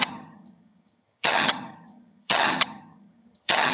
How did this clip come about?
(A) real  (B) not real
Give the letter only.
B